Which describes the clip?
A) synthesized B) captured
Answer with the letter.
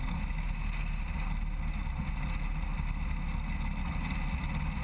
B